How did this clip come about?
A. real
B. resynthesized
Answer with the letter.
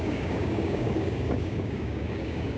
B